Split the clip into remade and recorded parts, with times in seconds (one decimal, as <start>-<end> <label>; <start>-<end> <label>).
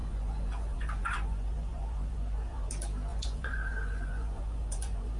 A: 0.0-2.7 remade; 2.7-3.1 recorded; 3.1-5.2 remade